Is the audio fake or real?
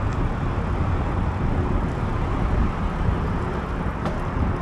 real